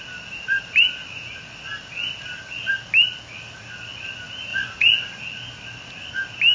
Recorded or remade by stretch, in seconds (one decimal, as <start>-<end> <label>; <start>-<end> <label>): 0.0-4.5 recorded; 4.5-5.2 remade; 5.2-6.5 recorded